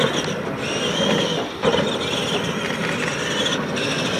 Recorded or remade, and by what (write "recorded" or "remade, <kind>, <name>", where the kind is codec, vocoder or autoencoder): recorded